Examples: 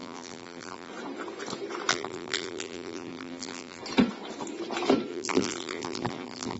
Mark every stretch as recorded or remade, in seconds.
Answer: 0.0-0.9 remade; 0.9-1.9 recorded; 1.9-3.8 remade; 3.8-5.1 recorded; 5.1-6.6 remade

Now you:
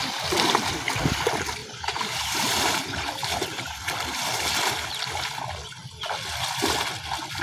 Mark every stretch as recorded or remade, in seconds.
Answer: 0.0-1.6 recorded; 1.6-3.7 remade; 3.7-7.4 recorded